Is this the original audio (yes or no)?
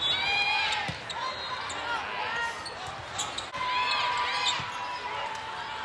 yes